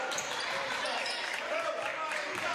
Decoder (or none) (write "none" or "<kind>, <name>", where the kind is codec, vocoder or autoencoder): vocoder, BigVGAN v2